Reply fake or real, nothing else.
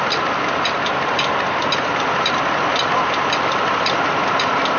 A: real